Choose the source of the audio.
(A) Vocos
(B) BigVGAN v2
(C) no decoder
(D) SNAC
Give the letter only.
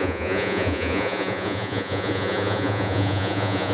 A